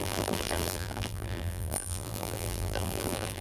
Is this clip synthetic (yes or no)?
yes